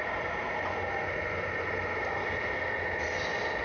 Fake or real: real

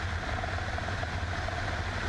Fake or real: real